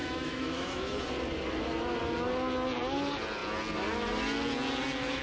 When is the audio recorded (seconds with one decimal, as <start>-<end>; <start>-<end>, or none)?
1.0-5.2